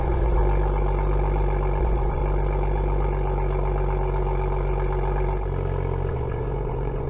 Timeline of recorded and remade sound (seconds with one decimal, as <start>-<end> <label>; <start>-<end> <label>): 0.0-0.4 remade; 0.4-1.8 recorded; 1.8-2.2 remade; 2.2-6.1 recorded; 6.1-7.1 remade